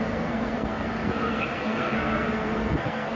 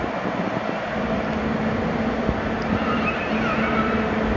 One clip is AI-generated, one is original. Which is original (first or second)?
second